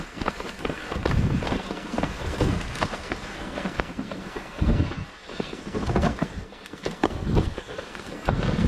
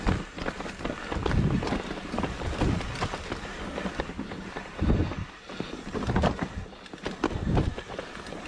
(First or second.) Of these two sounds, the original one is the second